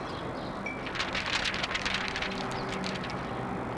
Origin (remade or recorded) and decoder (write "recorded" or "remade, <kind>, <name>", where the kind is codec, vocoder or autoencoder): recorded